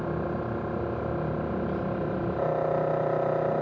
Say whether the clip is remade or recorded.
recorded